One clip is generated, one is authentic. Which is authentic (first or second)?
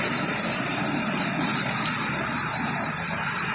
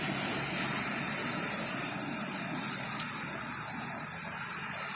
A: second